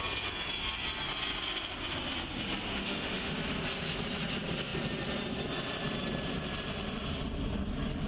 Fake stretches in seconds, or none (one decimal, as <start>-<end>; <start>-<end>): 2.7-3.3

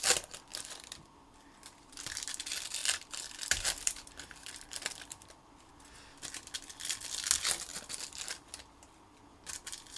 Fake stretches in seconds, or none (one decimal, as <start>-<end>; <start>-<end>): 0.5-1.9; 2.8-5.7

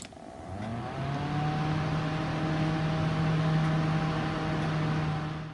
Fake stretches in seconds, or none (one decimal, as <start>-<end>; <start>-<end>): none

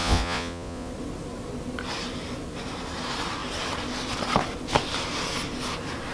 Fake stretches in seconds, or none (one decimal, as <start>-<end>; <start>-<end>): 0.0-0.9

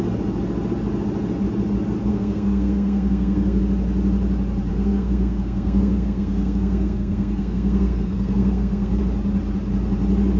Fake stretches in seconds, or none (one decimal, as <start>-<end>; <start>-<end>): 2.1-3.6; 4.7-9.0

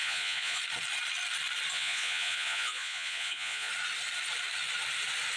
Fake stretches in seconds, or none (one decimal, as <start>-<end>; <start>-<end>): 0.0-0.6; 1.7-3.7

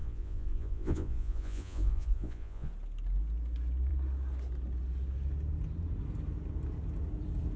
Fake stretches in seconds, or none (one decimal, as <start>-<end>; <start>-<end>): 0.0-2.7

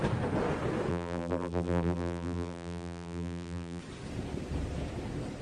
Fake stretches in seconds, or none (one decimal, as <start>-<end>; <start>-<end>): 0.9-3.8